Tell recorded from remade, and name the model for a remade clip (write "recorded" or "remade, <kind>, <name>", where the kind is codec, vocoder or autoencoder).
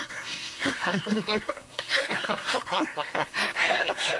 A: remade, codec, SNAC